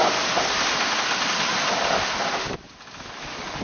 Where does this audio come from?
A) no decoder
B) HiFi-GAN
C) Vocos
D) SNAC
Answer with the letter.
A